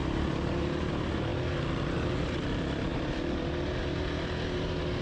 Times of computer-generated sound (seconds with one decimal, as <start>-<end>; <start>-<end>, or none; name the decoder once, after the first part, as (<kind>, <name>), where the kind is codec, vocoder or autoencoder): none